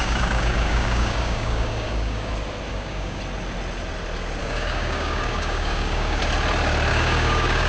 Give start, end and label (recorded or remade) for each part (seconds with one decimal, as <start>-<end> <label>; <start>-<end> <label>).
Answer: 0.0-2.3 remade; 2.3-2.7 recorded; 2.7-3.2 remade; 3.2-4.4 recorded; 4.4-6.2 remade; 6.2-6.9 recorded; 6.9-7.7 remade